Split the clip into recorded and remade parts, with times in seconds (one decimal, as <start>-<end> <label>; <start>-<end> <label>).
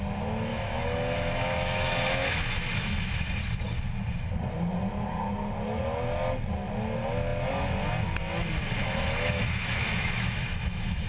0.0-0.5 recorded; 0.5-3.3 remade; 3.3-8.8 recorded; 8.8-11.1 remade